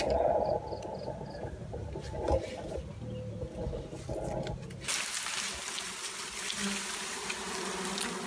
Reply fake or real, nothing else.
real